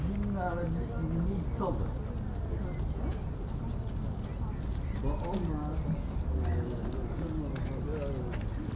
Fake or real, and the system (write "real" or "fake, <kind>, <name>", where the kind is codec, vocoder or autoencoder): real